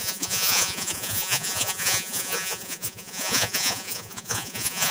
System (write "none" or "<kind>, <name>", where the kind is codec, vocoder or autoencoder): vocoder, Vocos